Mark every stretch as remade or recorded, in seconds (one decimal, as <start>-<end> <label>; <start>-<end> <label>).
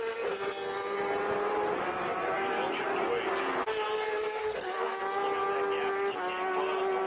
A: 0.0-4.4 recorded; 4.4-5.0 remade; 5.0-7.1 recorded